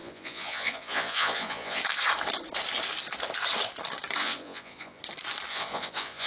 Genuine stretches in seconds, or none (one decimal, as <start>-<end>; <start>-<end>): 1.8-4.2; 5.0-5.5